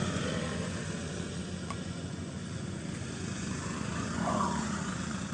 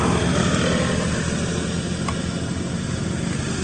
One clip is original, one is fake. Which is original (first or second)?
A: second